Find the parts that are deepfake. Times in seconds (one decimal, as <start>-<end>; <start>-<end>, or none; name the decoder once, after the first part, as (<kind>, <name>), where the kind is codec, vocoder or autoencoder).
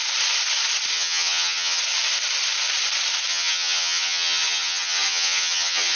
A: 0.9-1.8 (vocoder, HiFi-GAN); 3.3-6.0